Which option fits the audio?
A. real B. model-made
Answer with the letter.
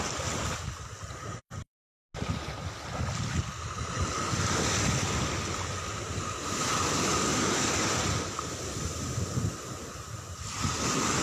A